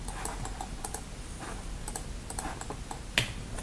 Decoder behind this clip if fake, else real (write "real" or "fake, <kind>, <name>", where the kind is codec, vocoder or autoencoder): real